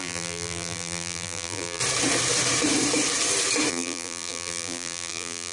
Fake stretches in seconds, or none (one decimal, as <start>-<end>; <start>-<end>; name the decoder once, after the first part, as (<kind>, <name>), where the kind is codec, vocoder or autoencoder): 0.0-1.8 (vocoder, BigVGAN v2); 3.7-5.5